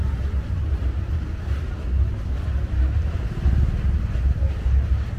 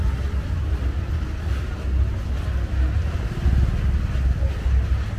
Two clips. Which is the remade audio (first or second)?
first